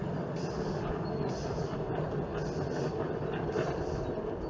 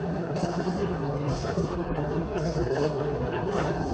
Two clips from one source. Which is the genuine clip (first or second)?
first